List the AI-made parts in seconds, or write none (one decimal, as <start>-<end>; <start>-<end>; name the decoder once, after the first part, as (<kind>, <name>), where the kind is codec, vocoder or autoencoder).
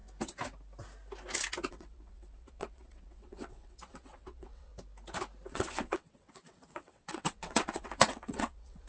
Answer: 1.7-4.7 (vocoder, WaveNeXt); 5.5-8.9